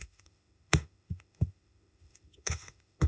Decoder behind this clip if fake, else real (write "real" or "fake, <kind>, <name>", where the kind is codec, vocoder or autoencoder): fake, autoencoder, DAC-VAE